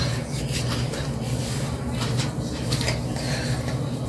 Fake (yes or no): no